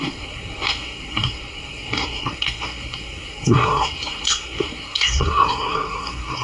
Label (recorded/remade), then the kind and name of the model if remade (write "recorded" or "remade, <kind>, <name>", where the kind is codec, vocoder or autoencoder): remade, codec, SNAC